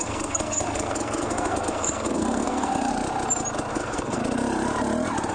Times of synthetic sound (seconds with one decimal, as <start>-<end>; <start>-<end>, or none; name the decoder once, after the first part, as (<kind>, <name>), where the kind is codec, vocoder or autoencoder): 0.0-2.9 (codec, SNAC); 3.7-4.2